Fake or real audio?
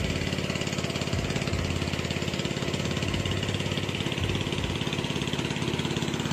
real